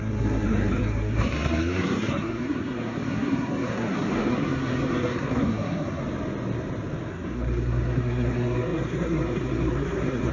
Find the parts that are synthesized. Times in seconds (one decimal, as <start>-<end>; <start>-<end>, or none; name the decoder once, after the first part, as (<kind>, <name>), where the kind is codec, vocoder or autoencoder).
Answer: 0.0-6.0 (codec, SNAC); 7.1-10.3

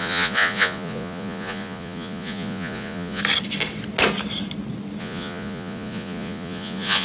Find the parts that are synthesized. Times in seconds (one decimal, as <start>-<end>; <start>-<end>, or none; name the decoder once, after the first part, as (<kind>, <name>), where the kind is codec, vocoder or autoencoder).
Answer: 0.0-3.2 (vocoder, Vocos); 5.0-7.0

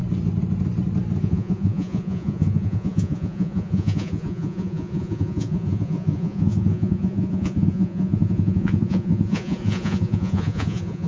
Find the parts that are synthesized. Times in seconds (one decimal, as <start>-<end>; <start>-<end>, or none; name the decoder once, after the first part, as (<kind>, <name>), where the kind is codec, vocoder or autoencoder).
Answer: 1.2-11.1 (vocoder, Vocos)

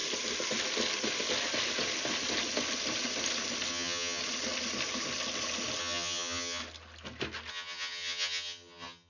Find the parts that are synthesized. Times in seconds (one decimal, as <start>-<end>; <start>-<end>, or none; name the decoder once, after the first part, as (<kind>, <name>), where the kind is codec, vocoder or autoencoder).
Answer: 3.7-4.2 (vocoder, HiFi-GAN); 5.8-6.6; 7.5-9.1

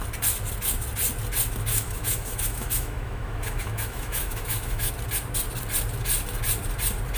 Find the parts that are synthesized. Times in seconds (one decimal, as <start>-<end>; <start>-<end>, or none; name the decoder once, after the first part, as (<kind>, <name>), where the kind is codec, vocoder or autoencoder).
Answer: 1.7-4.9 (autoencoder, DAC-VAE)

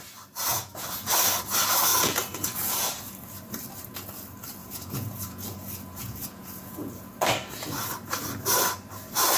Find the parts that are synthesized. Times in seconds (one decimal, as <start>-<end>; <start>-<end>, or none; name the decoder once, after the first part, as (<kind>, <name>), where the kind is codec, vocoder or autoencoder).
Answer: 0.5-1.1 (vocoder, Vocos); 1.9-2.9; 4.6-7.1

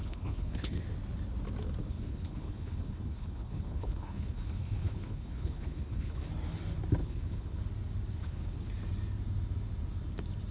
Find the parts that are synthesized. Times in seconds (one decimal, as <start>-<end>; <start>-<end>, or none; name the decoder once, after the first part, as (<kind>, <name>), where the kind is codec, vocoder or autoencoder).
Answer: 0.0-0.8 (codec, HILCodec); 1.8-6.3; 7.0-7.6; 8.2-8.7